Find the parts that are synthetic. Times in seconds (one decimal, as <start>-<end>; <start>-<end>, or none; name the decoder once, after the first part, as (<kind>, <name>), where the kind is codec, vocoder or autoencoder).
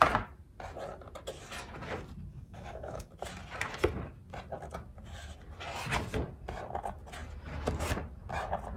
2.3-3.1 (codec, DAC)